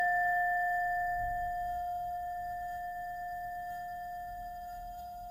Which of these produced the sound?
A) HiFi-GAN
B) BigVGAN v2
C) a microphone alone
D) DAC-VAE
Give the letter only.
D